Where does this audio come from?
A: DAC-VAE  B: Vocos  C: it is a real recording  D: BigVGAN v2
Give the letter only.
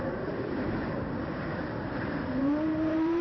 D